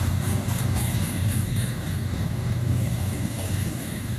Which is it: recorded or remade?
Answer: remade